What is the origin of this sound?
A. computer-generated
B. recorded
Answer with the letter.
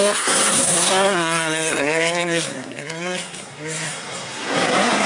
A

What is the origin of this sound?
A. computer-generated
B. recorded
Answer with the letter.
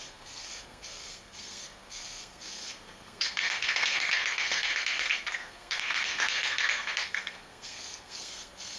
A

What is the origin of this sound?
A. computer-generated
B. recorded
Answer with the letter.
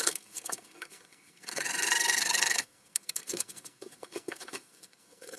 A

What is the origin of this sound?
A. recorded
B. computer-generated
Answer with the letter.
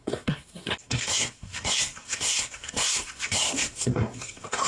B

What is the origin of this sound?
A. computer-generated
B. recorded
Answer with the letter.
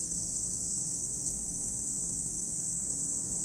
A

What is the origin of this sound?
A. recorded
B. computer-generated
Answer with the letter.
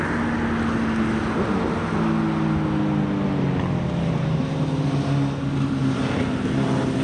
A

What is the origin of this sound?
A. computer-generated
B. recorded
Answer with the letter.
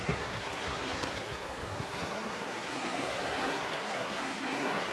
A